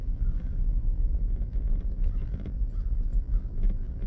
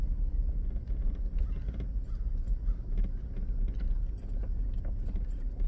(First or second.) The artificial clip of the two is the first